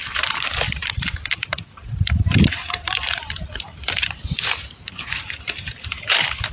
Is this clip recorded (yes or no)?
no